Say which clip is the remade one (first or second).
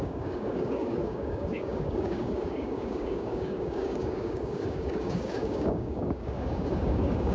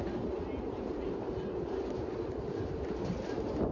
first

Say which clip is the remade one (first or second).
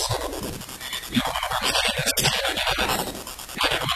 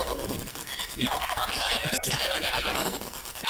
second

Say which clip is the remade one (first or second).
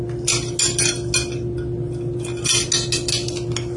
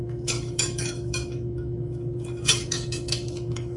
second